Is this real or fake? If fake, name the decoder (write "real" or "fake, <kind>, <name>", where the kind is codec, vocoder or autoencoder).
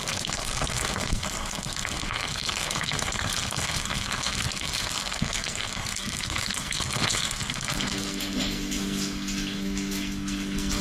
fake, codec, SNAC